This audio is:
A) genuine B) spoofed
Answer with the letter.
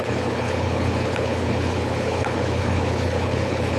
B